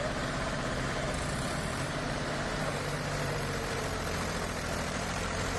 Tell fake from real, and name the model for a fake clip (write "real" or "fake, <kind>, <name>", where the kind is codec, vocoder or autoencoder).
fake, vocoder, BigVGAN v2